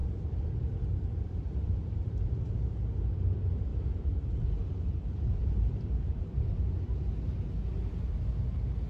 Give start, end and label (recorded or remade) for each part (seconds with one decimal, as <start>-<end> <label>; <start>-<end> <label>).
0.0-2.2 remade; 2.2-5.4 recorded; 5.4-6.2 remade; 6.2-7.8 recorded; 7.8-8.5 remade; 8.5-8.9 recorded